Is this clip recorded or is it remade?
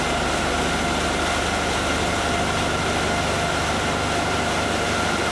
recorded